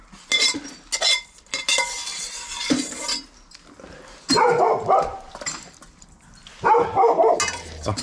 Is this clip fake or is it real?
real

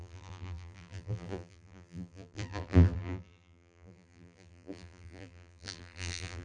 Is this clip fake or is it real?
fake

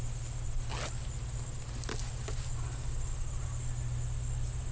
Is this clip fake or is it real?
real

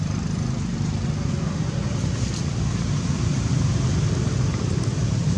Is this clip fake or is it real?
real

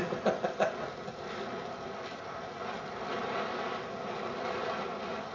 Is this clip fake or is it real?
real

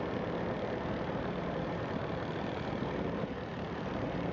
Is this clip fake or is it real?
fake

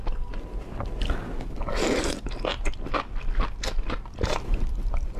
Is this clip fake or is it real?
real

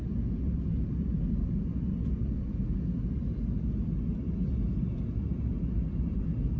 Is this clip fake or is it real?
real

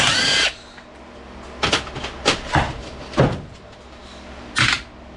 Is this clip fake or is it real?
real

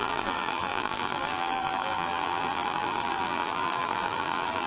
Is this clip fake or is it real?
fake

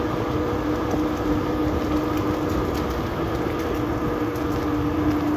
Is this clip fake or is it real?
real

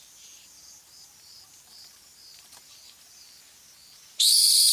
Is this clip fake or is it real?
fake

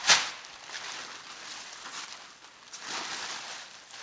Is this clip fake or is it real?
real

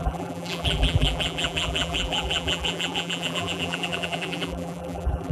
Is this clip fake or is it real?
fake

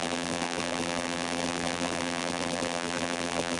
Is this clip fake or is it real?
fake